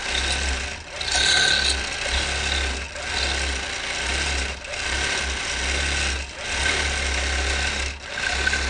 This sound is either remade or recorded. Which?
recorded